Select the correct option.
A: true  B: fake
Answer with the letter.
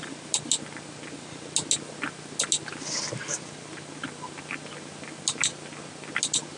A